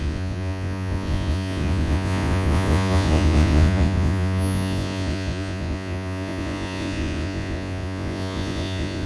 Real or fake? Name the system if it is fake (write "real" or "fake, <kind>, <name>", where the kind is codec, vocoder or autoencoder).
fake, vocoder, Vocos